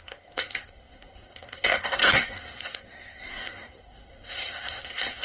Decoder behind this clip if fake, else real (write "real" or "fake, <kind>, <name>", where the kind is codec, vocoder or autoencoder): fake, codec, SNAC